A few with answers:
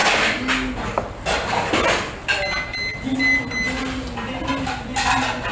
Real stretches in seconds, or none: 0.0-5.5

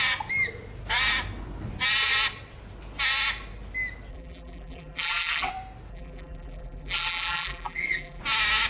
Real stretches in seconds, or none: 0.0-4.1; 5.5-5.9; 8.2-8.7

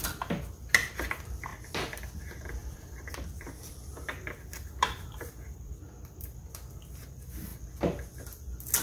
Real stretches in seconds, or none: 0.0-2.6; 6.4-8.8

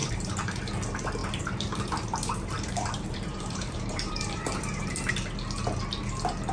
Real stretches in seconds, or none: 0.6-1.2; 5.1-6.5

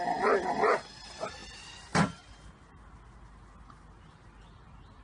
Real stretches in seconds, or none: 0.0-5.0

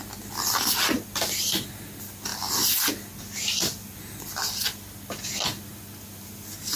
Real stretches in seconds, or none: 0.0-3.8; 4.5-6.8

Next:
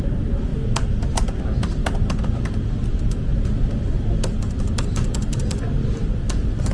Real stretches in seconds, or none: 0.5-1.4